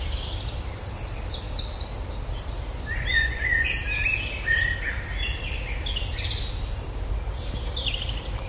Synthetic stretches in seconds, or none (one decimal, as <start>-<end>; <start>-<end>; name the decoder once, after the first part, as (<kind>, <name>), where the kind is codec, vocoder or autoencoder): 3.1-3.7 (vocoder, Vocos)